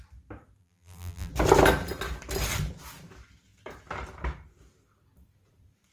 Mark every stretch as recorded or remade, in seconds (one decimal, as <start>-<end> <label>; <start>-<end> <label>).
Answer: 0.0-0.6 recorded; 0.6-1.3 remade; 1.3-5.9 recorded